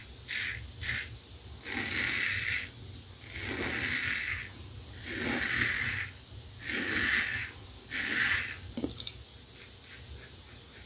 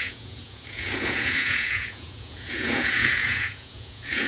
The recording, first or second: first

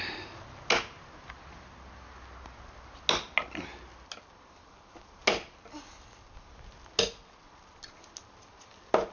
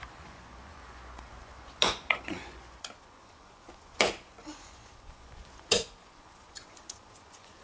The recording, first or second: first